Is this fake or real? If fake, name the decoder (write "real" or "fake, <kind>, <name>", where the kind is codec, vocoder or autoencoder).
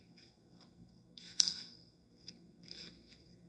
fake, codec, SNAC